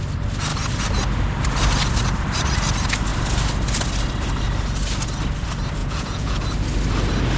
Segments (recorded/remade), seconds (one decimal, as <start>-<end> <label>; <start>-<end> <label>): 0.0-5.8 recorded; 5.8-6.4 remade; 6.4-7.4 recorded